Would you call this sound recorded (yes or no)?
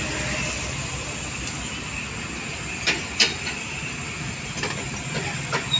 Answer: yes